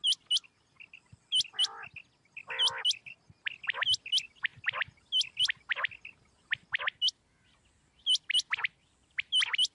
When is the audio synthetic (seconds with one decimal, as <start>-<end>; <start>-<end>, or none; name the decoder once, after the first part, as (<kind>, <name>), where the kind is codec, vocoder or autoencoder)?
none